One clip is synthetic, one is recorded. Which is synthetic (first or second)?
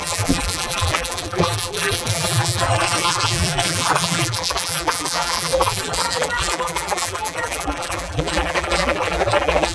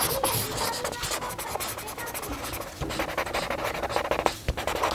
first